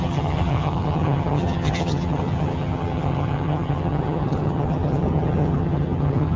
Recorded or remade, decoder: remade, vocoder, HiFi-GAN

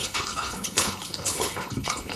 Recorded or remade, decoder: remade, codec, HILCodec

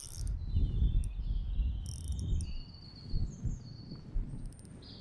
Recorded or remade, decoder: recorded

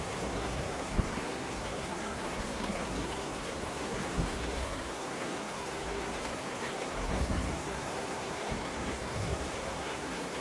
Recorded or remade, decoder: remade, codec, SNAC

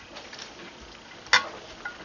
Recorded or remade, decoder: recorded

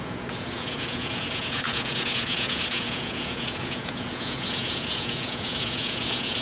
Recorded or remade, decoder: remade, vocoder, Vocos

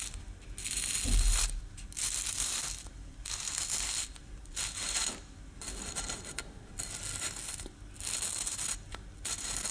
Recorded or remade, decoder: recorded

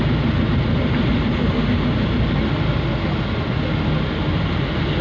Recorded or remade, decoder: recorded